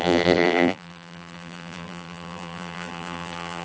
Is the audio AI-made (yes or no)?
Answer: yes